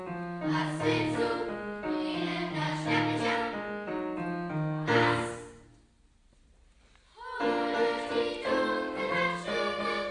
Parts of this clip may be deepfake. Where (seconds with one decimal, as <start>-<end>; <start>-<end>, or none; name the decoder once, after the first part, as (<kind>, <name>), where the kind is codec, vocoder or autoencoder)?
0.6-2.7 (vocoder, BigVGAN v2)